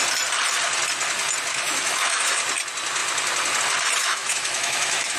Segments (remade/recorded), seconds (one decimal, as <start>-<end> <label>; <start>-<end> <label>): 0.0-1.5 recorded; 1.5-2.4 remade; 2.4-4.0 recorded; 4.0-5.2 remade